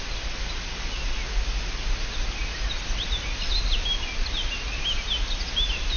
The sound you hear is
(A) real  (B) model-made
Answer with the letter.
A